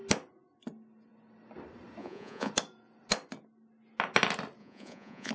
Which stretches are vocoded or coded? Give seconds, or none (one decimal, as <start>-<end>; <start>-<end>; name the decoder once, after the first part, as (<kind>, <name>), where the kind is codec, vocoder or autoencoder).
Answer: 2.0-2.5 (vocoder, Vocos); 4.6-5.3